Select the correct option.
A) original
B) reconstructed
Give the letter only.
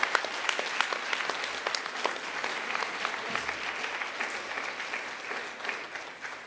A